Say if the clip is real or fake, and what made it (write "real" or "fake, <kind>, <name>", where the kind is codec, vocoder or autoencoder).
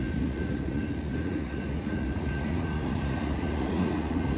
fake, vocoder, Vocos